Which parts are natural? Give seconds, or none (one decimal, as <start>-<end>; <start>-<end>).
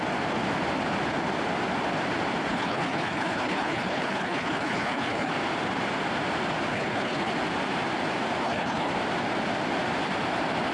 0.0-2.5; 5.3-6.7; 7.3-8.4; 8.9-10.7